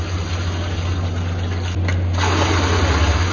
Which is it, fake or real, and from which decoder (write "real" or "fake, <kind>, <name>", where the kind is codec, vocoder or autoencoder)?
real